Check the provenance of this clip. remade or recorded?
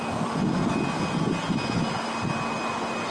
recorded